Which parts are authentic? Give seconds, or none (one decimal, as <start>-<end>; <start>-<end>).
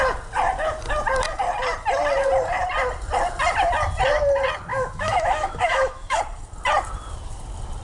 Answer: 0.0-4.7; 6.2-7.8